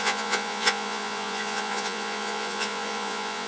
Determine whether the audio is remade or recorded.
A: remade